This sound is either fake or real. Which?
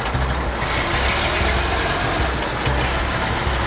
real